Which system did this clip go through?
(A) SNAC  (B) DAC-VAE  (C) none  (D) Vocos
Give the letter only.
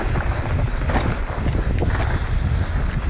C